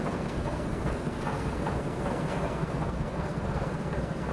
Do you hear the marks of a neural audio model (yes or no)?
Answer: yes